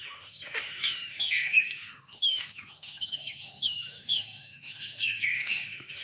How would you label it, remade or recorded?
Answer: remade